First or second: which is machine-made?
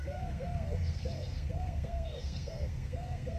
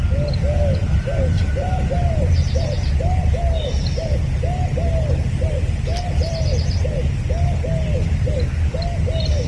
first